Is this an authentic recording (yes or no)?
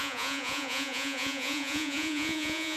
no